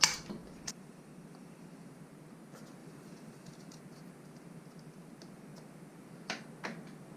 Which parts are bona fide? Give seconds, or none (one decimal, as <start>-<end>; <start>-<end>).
0.0-0.4; 1.9-2.8; 3.8-7.2